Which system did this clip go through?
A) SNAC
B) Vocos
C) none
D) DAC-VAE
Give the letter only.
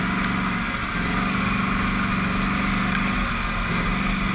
C